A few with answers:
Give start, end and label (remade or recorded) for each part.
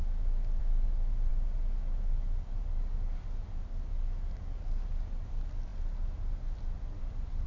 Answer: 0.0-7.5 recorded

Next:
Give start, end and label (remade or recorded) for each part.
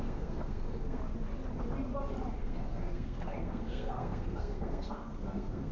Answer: 0.0-1.0 remade; 1.0-2.4 recorded; 2.4-5.7 remade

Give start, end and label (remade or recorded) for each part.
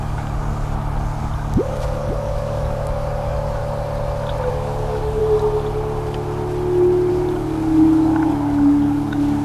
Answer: 0.0-0.4 remade; 0.4-1.2 recorded; 1.2-3.6 remade; 3.6-4.5 recorded; 4.5-5.2 remade; 5.2-7.1 recorded; 7.1-9.4 remade